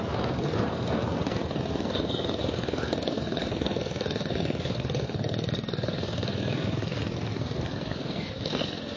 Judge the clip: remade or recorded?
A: remade